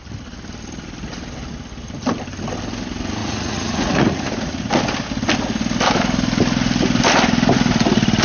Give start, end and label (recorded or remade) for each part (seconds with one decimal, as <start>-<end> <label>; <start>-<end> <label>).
0.0-3.2 recorded; 3.2-4.7 remade; 4.7-8.2 recorded